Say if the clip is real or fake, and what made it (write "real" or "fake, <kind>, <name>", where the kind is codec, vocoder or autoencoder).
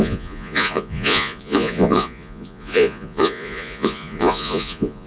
fake, vocoder, Vocos